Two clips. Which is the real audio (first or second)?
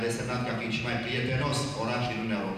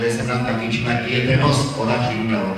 first